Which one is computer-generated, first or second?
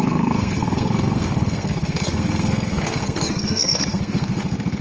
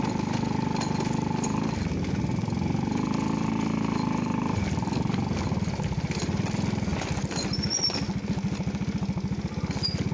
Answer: first